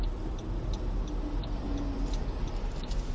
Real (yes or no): yes